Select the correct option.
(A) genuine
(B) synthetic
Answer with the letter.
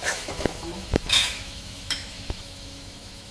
B